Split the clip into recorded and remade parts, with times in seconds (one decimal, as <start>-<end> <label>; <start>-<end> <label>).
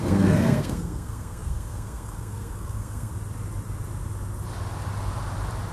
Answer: 0.0-3.1 remade; 3.1-5.7 recorded